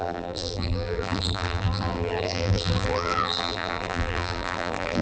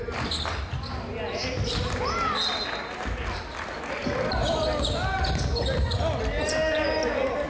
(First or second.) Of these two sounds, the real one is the second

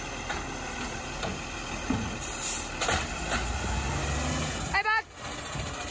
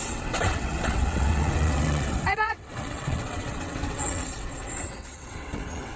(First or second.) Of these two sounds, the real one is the first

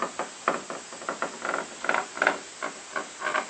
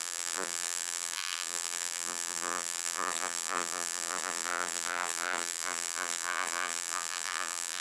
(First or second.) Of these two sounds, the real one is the first